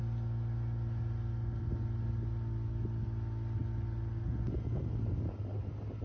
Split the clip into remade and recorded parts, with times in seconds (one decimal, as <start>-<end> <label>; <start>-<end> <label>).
0.0-6.0 recorded

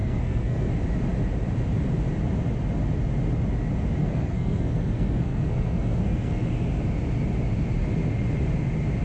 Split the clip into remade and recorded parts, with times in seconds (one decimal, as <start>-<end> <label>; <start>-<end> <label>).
0.0-0.7 remade; 0.7-4.0 recorded; 4.0-6.5 remade; 6.5-9.0 recorded

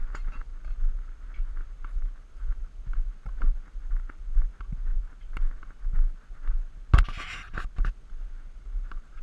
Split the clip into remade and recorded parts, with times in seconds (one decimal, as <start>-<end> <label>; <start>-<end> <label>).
0.0-9.2 recorded

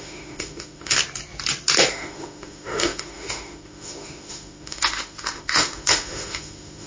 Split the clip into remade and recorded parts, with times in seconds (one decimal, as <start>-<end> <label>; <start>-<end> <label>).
0.0-1.0 remade; 1.0-1.9 recorded; 1.9-6.9 remade

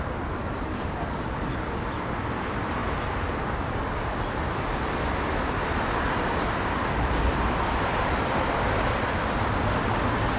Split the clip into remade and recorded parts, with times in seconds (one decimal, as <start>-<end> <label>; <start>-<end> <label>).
0.0-10.4 remade